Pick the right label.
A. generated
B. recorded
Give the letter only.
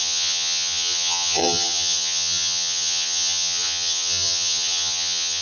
A